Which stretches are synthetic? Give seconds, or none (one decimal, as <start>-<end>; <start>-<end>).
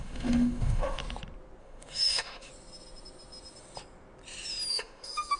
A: 0.0-1.0; 1.6-2.5; 4.7-5.4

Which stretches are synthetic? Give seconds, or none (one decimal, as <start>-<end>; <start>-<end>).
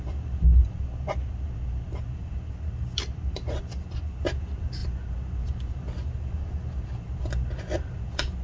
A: none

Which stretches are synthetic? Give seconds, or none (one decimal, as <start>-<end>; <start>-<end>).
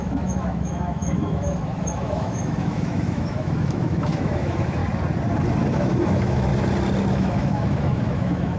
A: 0.0-4.8; 5.7-6.5; 7.1-8.6